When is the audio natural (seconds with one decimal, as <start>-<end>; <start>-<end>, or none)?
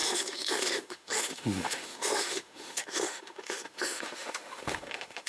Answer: none